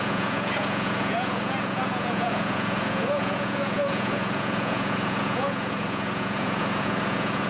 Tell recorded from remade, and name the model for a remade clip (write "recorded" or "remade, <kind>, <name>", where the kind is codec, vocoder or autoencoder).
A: remade, vocoder, Vocos